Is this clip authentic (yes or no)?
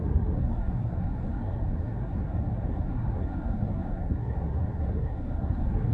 no